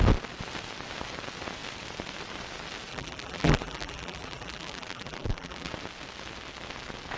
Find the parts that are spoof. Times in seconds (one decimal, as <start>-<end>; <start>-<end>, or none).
2.9-5.7